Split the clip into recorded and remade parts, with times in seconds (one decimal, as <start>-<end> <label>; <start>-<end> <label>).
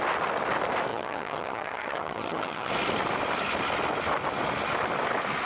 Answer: 0.0-0.9 recorded; 0.9-2.7 remade; 2.7-5.5 recorded